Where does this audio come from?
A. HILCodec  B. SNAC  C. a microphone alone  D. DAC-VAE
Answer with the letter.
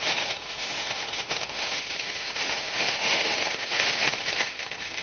D